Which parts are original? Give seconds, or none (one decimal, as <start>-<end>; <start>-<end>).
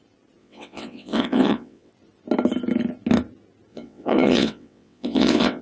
0.0-0.4; 1.9-3.7